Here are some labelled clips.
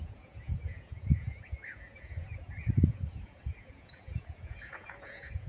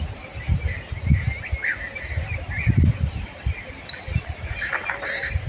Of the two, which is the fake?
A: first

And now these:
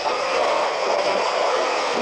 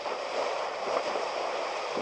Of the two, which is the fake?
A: first